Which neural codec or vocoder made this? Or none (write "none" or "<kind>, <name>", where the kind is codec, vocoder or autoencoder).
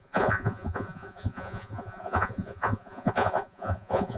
vocoder, Vocos